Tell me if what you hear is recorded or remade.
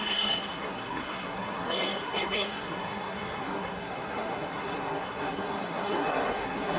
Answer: remade